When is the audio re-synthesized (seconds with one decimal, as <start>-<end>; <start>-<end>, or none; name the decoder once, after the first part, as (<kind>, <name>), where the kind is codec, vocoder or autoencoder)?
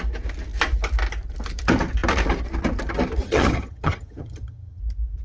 3.2-4.8 (vocoder, HiFi-GAN)